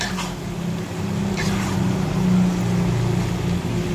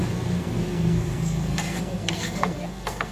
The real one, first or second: first